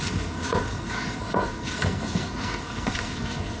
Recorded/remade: remade